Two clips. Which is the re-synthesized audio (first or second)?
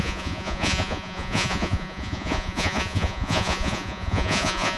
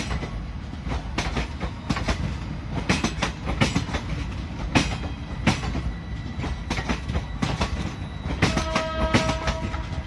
first